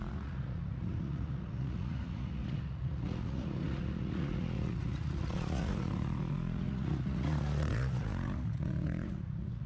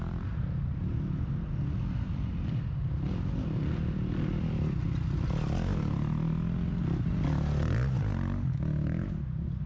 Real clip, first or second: second